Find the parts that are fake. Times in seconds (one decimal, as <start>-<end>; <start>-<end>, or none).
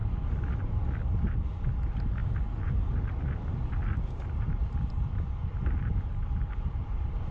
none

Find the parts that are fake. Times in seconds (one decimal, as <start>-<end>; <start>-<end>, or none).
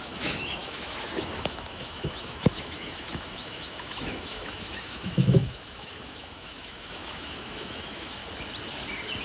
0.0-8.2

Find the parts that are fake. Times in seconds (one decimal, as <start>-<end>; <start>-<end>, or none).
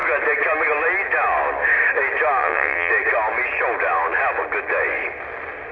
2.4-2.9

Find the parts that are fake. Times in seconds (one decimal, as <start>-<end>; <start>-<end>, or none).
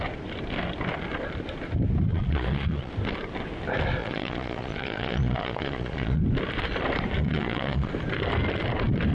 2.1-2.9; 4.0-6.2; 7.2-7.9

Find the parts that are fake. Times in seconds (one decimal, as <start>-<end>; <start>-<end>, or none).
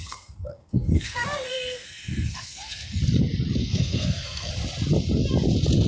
0.0-3.0; 3.6-4.5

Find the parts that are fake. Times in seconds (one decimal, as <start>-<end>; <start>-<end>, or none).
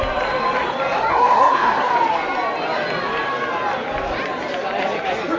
1.1-1.9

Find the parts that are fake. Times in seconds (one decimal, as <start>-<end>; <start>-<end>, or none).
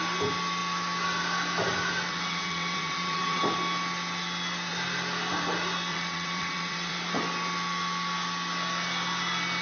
2.1-3.4; 5.9-6.9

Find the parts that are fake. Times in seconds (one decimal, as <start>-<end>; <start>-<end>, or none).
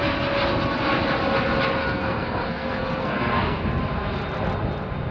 1.8-3.8